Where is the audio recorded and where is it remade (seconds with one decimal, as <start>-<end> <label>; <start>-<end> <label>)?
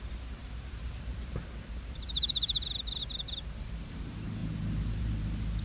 0.0-0.4 recorded; 0.4-1.4 remade; 1.4-4.4 recorded; 4.4-5.1 remade; 5.1-5.6 recorded